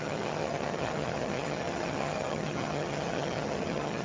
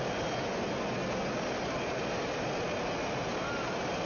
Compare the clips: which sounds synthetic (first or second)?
first